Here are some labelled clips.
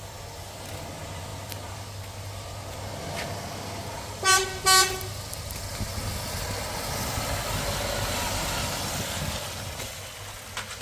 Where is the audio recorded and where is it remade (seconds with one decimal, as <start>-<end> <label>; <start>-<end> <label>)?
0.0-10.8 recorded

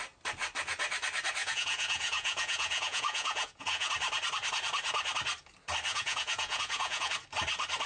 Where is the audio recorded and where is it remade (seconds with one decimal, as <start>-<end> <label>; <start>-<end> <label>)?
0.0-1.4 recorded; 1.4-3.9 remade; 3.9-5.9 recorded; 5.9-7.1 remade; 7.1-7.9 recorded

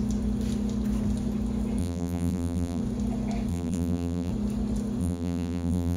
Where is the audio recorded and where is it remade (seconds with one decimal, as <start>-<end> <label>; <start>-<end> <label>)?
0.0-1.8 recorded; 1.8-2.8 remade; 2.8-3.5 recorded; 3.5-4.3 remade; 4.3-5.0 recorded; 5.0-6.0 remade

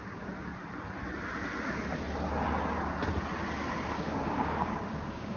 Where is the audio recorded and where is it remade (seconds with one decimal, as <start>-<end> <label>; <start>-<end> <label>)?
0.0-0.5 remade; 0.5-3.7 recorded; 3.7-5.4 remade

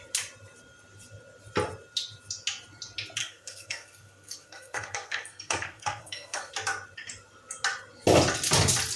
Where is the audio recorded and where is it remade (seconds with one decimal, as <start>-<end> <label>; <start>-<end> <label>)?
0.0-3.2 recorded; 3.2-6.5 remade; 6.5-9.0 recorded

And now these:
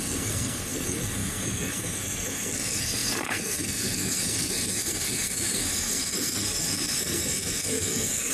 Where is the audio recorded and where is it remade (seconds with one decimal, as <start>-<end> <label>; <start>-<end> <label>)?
0.0-8.3 remade